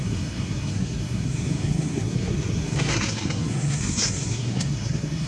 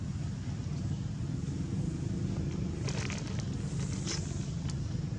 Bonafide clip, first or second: second